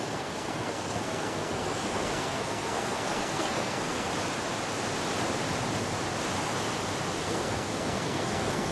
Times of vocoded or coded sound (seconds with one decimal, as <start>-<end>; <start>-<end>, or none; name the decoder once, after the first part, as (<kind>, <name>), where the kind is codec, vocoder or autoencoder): 0.0-4.1 (codec, SNAC); 7.2-8.7